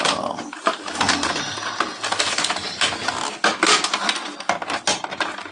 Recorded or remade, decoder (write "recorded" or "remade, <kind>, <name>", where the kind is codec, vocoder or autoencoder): recorded